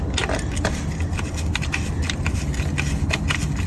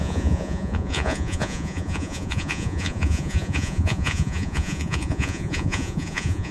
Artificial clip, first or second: second